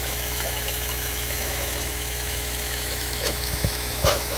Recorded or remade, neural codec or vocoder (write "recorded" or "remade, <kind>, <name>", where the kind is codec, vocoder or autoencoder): remade, autoencoder, DAC-VAE